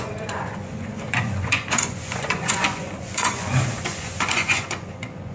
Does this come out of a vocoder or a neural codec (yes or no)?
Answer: yes